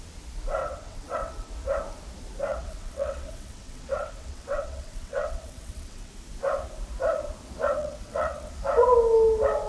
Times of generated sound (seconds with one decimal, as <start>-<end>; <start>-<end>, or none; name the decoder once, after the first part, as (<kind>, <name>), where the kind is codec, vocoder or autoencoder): 0.6-1.5 (vocoder, WaveNeXt); 2.5-6.1; 7.8-8.5